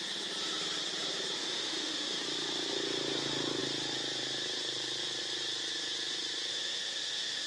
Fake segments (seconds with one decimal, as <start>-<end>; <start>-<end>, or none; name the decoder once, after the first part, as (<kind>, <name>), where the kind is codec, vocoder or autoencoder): 1.4-2.2 (autoencoder, DAC-VAE); 6.5-7.5